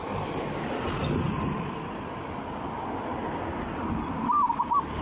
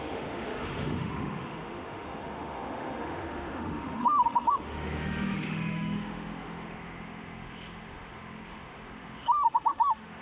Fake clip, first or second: second